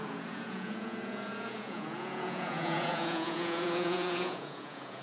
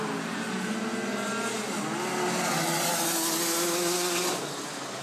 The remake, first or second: first